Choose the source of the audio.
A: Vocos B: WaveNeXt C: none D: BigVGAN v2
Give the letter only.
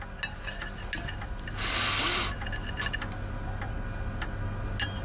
C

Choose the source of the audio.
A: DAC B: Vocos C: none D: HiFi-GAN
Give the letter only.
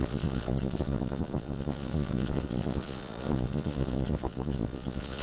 B